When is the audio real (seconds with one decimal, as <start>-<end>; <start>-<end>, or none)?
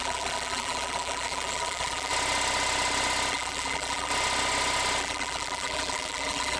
2.1-3.3; 4.1-5.0